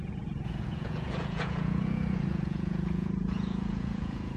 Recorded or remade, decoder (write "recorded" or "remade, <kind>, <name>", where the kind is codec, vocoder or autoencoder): remade, vocoder, Vocos